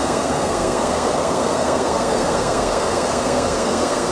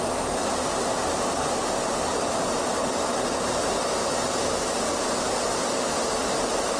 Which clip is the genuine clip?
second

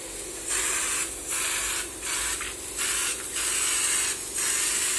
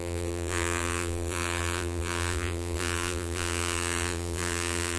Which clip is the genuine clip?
first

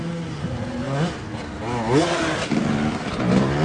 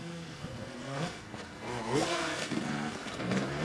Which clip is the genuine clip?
first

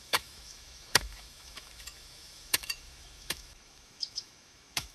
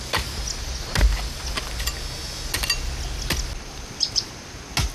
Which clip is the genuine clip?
second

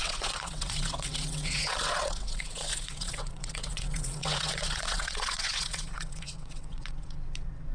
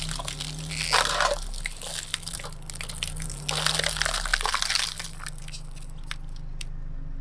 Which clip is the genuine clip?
second